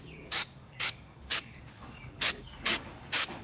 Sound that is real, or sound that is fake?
fake